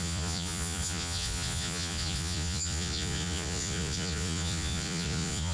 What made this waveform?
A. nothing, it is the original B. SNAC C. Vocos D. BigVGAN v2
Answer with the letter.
C